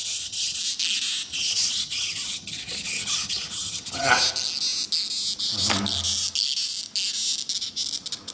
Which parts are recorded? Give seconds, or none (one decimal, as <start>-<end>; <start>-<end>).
0.6-1.3; 4.1-8.3